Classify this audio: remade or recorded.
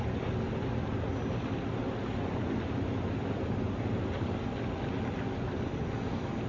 recorded